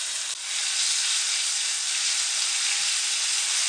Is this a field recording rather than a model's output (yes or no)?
yes